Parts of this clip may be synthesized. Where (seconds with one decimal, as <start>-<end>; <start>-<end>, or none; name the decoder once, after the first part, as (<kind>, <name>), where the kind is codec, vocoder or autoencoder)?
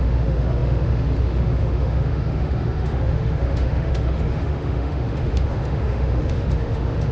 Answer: 0.0-7.1 (autoencoder, DAC-VAE)